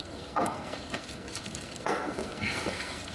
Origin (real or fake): fake